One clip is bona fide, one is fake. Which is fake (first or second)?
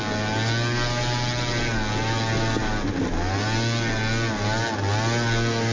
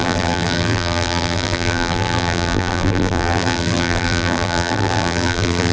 second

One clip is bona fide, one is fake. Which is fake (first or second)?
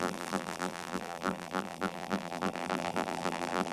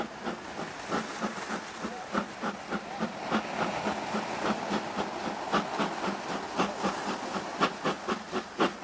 first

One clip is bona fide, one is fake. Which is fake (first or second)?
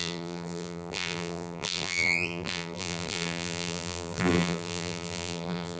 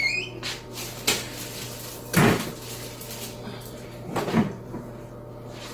first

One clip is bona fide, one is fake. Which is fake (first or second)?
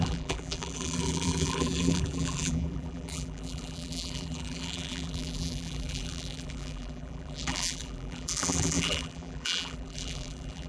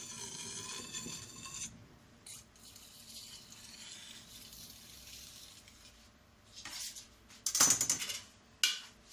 first